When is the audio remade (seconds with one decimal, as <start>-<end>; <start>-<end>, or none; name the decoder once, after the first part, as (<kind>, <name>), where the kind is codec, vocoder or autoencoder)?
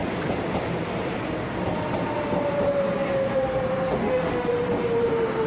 4.0-4.5 (autoencoder, DAC-VAE)